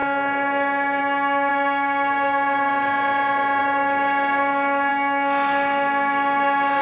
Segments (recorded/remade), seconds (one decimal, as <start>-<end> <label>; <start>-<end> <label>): 0.0-6.8 recorded